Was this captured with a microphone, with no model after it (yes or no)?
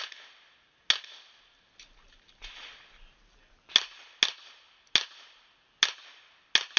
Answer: yes